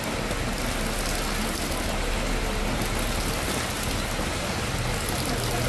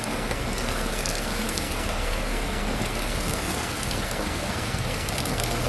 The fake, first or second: second